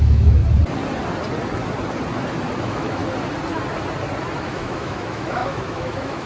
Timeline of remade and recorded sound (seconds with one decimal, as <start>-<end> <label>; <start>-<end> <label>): 0.0-0.4 remade; 0.4-2.6 recorded; 2.6-3.0 remade; 3.0-4.4 recorded; 4.4-6.3 remade